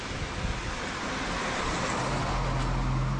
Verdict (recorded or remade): recorded